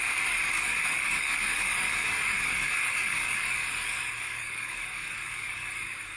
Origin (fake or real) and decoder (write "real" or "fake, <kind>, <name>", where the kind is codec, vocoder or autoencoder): fake, codec, DAC